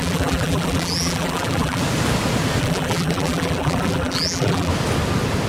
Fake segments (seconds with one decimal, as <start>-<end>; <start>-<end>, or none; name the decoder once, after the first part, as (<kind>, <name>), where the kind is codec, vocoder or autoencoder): 0.0-1.8 (vocoder, BigVGAN v2); 2.6-4.7